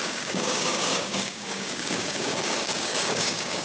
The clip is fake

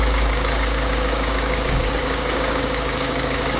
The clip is fake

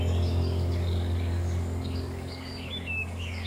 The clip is fake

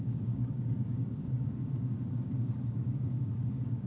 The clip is fake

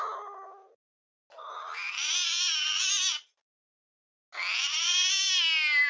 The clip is real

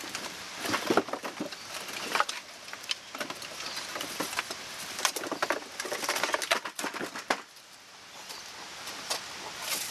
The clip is real